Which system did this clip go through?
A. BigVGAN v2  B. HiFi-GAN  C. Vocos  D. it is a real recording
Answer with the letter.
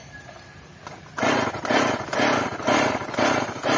D